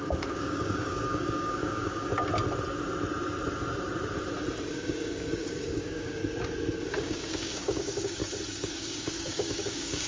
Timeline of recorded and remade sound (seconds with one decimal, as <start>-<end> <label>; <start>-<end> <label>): 0.0-2.1 remade; 2.1-4.7 recorded; 4.7-6.2 remade; 6.2-6.8 recorded; 6.8-8.2 remade; 8.2-8.7 recorded; 8.7-10.1 remade